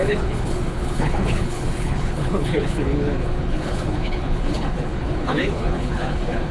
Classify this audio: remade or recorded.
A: remade